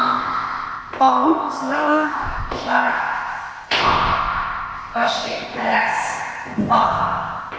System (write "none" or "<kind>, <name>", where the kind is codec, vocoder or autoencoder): codec, ZipCodec